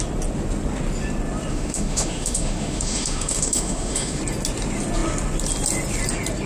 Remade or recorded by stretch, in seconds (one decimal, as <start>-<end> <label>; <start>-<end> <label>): 0.0-1.5 recorded; 1.5-4.2 remade; 4.2-6.5 recorded